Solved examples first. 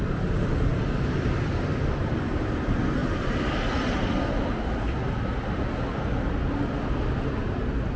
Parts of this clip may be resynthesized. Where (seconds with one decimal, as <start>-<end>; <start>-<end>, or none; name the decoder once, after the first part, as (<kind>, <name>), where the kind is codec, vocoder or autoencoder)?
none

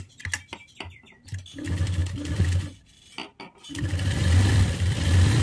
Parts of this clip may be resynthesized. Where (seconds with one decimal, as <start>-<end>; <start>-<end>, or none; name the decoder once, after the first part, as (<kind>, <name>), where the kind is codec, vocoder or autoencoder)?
none

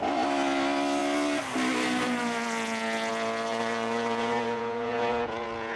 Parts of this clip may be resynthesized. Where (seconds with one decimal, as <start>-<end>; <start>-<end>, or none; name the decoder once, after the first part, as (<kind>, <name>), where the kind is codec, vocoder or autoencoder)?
3.5-5.8 (vocoder, Vocos)